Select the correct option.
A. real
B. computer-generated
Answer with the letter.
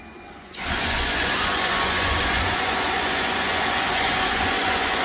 B